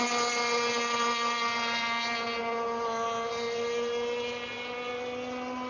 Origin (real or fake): real